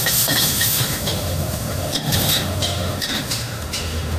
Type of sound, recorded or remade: remade